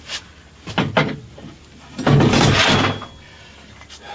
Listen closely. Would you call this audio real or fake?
real